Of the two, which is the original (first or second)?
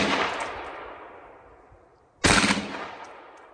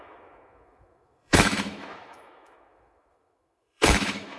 first